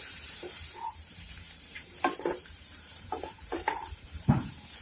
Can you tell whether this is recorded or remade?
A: remade